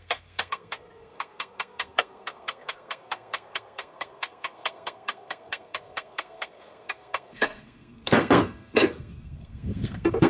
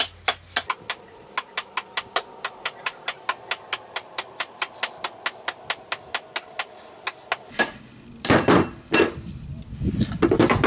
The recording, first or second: second